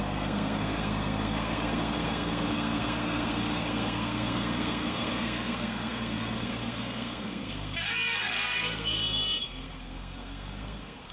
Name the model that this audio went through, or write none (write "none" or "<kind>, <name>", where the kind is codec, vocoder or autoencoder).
codec, SNAC